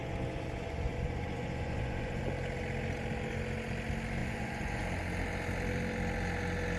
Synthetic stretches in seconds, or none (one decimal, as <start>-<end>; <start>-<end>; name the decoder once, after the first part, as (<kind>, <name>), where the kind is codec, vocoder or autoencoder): 0.0-2.2 (vocoder, Vocos); 4.2-4.8